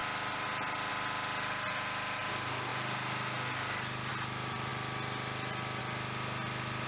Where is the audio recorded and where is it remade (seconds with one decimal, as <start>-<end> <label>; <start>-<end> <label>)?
0.0-6.9 recorded